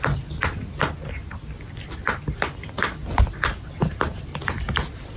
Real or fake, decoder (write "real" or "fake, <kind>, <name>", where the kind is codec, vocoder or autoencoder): real